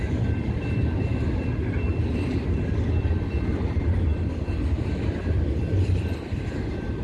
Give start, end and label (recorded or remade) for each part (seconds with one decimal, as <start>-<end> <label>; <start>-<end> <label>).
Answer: 0.0-1.1 remade; 1.1-5.3 recorded; 5.3-7.0 remade